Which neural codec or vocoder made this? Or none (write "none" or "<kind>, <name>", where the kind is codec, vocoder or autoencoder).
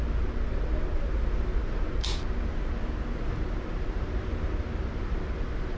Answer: none